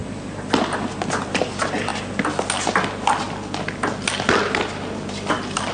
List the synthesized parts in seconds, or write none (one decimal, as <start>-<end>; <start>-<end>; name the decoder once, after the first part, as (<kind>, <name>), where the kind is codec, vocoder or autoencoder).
none